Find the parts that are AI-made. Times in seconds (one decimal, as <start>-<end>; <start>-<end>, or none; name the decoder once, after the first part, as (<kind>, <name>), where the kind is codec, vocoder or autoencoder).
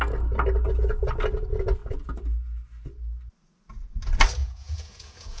4.4-5.4 (vocoder, Vocos)